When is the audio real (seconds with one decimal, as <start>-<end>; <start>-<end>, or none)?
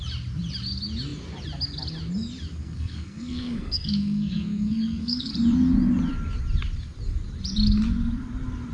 0.0-2.6; 5.3-8.7